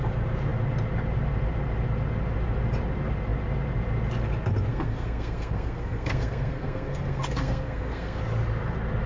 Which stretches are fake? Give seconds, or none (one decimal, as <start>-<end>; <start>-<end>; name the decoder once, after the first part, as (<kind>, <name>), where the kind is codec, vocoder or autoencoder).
4.7-8.2 (codec, SNAC)